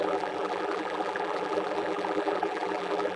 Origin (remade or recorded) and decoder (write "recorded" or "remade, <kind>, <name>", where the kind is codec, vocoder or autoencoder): remade, vocoder, BigVGAN v2